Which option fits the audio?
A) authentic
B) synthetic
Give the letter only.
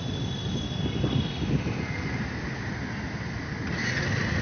A